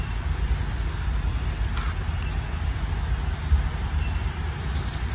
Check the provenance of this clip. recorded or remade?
recorded